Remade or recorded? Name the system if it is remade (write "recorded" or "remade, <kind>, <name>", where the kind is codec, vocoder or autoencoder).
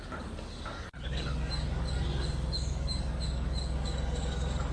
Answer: remade, codec, DAC